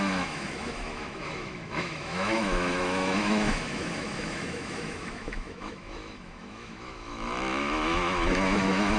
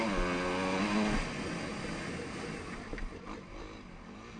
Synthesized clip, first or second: first